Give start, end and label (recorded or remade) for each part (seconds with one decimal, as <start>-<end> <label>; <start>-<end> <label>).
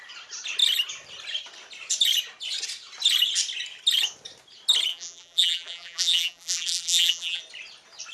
0.0-4.9 recorded; 4.9-7.4 remade; 7.4-8.1 recorded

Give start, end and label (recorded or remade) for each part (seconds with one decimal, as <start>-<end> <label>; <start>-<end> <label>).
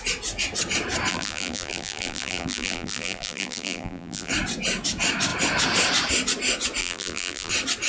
0.0-1.1 recorded; 1.1-4.3 remade; 4.3-6.8 recorded; 6.8-7.5 remade; 7.5-7.9 recorded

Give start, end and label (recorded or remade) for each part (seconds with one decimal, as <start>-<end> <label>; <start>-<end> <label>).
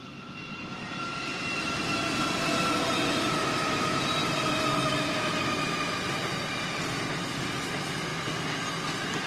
0.0-9.3 recorded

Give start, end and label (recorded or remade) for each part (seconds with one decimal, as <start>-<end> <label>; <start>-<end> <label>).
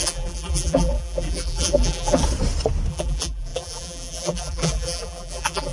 0.0-2.2 remade; 2.2-2.9 recorded; 2.9-5.7 remade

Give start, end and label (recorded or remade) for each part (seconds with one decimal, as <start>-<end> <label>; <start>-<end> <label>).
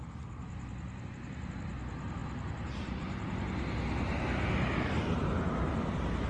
0.0-6.3 recorded